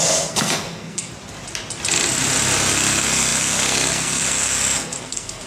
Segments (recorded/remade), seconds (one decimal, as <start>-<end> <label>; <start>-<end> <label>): 0.0-1.1 remade; 1.1-2.7 recorded; 2.7-5.5 remade